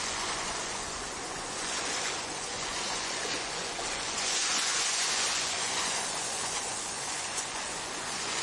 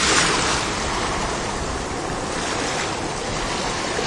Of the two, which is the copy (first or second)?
first